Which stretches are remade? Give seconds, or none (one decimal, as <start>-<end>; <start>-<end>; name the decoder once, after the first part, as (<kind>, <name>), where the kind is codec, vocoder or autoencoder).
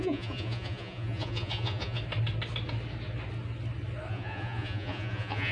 0.0-2.0 (vocoder, Vocos); 4.1-5.5